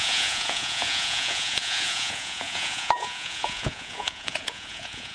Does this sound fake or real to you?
fake